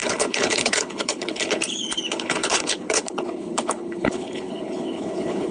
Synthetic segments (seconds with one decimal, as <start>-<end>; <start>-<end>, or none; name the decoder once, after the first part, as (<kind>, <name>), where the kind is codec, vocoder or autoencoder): 0.0-5.5 (codec, HILCodec)